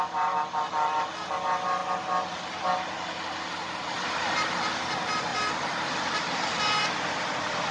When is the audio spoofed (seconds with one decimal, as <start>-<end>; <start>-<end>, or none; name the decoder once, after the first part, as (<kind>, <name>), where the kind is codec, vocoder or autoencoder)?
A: none